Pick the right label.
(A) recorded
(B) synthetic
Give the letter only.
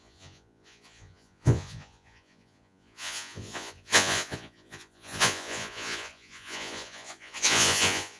B